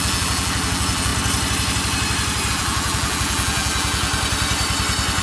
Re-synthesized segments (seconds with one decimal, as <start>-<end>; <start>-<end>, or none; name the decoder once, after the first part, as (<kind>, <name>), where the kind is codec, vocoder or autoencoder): 0.0-1.1 (vocoder, BigVGAN v2); 2.5-4.1